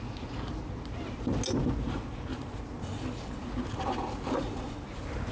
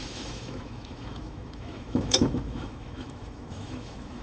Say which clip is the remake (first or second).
second